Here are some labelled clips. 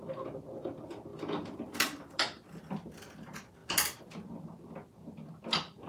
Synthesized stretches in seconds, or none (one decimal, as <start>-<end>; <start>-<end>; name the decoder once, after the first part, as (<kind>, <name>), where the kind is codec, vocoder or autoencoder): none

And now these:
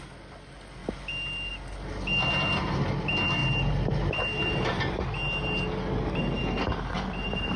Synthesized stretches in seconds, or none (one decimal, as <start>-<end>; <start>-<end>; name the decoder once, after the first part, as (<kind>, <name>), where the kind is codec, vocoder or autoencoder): none

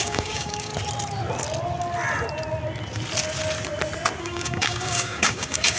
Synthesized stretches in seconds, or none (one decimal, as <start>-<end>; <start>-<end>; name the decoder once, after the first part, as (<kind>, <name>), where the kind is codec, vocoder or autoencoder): 0.0-0.7 (codec, DAC); 4.2-5.8

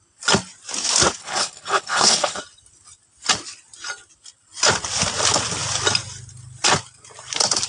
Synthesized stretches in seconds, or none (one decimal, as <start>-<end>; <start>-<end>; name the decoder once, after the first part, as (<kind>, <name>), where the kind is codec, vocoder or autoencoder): 1.2-2.4 (codec, HILCodec)

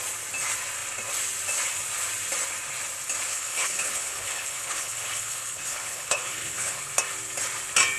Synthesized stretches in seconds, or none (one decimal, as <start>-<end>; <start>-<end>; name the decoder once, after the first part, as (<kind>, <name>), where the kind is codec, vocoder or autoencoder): 3.3-6.8 (codec, HILCodec)

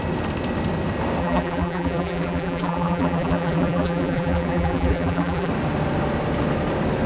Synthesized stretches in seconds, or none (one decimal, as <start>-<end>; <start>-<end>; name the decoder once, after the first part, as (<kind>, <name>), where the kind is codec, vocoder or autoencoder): 1.2-5.5 (vocoder, BigVGAN v2)

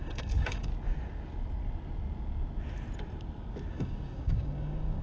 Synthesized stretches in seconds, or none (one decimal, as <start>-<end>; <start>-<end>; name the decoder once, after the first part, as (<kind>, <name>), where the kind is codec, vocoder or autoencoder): 0.0-0.7 (codec, DAC); 3.7-5.0